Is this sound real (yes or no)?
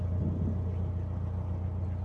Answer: yes